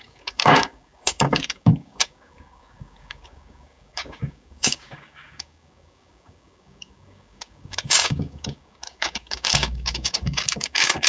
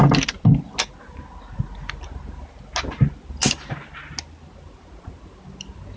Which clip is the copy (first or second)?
first